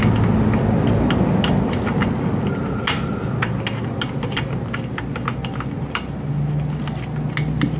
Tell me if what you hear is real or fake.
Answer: real